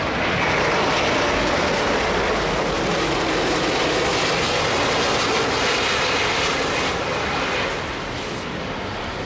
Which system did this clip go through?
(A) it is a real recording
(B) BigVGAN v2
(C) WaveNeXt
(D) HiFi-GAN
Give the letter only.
A